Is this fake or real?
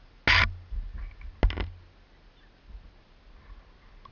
real